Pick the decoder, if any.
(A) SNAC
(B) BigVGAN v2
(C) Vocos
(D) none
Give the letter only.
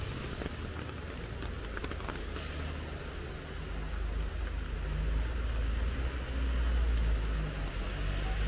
D